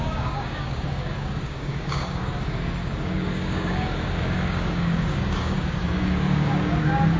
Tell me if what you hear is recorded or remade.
remade